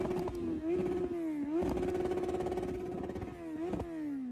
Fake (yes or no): no